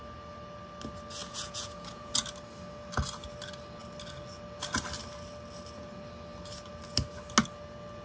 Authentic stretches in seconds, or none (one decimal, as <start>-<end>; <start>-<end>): 0.0-1.2; 2.1-8.0